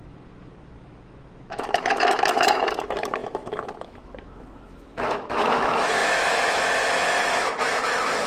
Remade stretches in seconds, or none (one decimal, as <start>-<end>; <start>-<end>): 0.0-8.3